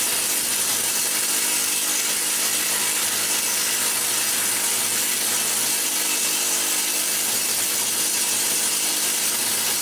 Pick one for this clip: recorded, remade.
recorded